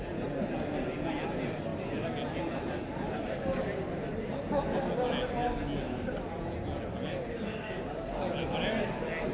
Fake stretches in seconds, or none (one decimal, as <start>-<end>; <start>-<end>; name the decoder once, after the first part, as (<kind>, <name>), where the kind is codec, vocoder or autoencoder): 7.5-8.2 (codec, DAC)